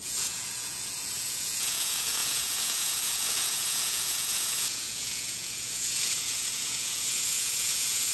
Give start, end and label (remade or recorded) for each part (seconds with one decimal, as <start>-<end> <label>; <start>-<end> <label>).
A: 0.0-8.1 remade

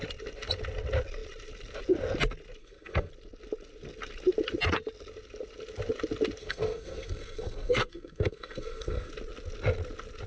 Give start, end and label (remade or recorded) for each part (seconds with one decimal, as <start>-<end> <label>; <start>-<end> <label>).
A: 0.0-2.6 recorded; 2.6-3.1 remade; 3.1-6.4 recorded; 6.4-9.1 remade; 9.1-10.3 recorded

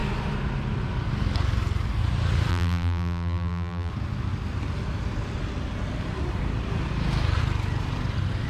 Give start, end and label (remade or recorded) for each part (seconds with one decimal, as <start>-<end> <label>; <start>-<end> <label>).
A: 0.0-2.5 recorded; 2.5-3.9 remade; 3.9-8.5 recorded

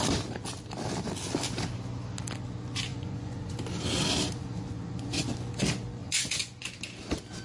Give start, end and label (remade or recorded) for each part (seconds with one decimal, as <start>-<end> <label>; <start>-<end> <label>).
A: 0.0-2.9 recorded; 2.9-3.5 remade; 3.5-4.4 recorded; 4.4-5.3 remade; 5.3-6.0 recorded; 6.0-6.7 remade; 6.7-7.4 recorded

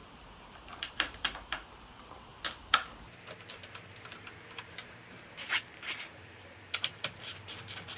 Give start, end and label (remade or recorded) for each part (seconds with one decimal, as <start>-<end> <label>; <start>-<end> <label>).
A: 0.0-2.3 remade; 2.3-3.5 recorded; 3.5-8.0 remade